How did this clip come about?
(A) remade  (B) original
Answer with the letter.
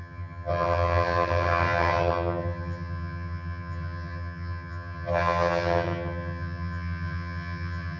A